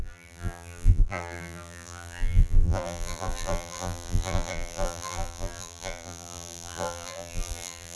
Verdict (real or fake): fake